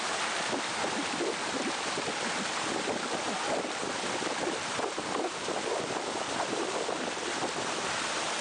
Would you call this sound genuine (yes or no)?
no